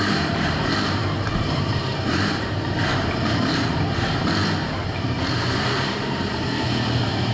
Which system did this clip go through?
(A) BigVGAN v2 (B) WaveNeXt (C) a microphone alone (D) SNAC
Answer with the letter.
A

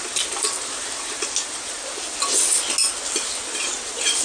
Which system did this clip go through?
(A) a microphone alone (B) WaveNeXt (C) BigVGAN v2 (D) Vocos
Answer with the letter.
A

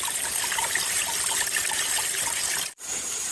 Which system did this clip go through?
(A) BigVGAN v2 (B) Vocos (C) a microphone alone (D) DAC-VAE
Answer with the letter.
A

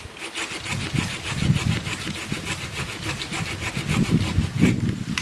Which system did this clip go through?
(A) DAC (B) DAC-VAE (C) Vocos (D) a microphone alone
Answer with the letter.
D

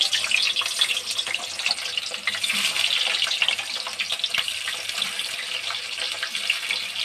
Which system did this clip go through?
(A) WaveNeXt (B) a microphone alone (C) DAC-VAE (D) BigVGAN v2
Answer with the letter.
B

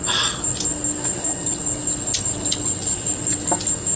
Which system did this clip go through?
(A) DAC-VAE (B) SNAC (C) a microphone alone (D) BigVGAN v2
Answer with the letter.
C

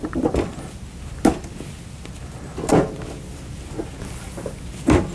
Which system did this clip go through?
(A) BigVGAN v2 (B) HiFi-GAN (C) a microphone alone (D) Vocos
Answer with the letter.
C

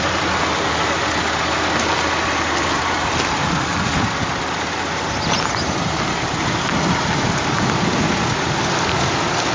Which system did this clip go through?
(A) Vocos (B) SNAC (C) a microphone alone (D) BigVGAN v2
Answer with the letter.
C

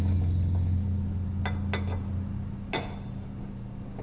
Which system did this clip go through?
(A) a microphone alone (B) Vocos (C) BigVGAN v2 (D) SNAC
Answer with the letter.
A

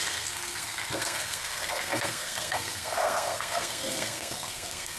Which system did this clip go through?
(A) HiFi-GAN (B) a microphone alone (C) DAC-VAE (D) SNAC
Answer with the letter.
D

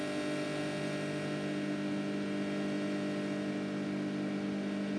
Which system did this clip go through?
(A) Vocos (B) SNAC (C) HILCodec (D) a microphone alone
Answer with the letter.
D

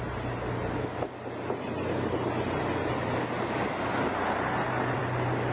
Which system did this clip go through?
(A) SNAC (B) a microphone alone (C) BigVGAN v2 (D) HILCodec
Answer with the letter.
C